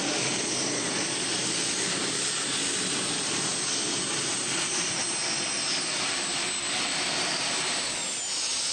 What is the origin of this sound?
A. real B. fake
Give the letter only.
A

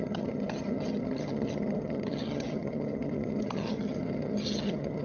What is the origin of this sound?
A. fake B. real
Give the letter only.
A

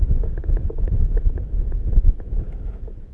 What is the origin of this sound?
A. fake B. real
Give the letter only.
A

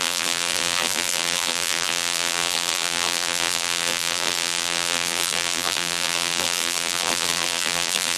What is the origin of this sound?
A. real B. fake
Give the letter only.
B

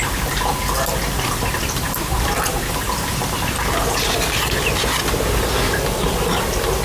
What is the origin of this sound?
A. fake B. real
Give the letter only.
B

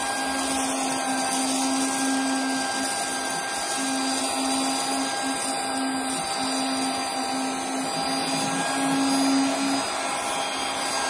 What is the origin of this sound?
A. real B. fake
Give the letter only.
A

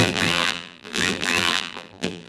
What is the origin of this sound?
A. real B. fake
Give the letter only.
B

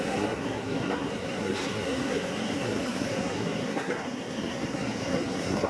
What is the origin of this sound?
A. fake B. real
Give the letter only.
A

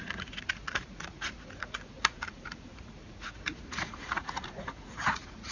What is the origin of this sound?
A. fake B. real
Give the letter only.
A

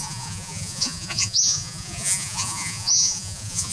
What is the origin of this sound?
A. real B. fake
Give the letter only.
B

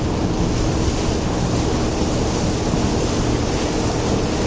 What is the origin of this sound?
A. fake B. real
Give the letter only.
B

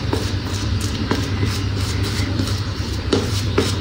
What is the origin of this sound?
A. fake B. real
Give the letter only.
A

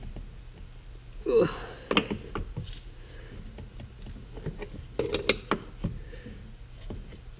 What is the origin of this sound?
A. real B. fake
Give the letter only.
A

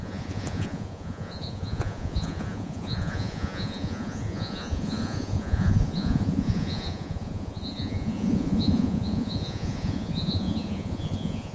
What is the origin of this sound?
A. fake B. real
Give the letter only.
A